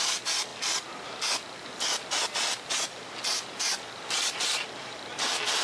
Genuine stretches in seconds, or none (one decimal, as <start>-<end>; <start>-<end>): 0.0-5.6

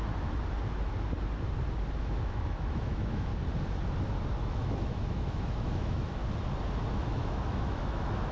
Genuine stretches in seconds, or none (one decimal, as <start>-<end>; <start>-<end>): 0.0-2.0; 3.3-4.4; 6.2-6.9

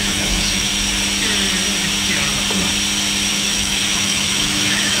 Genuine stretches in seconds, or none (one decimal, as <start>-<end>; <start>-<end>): 0.7-3.3

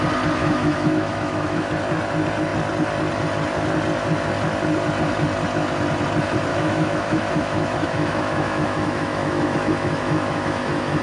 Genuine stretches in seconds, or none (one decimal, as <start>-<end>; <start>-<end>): 0.0-0.4; 1.7-6.5

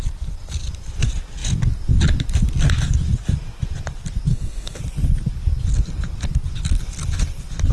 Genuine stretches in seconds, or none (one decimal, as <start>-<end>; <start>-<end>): 0.0-4.3; 4.8-7.7